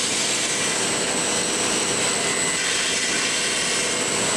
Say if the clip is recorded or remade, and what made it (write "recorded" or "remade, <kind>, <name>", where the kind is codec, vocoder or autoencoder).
recorded